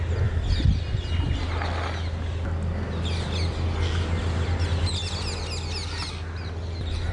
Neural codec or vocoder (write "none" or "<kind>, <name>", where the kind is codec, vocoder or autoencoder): none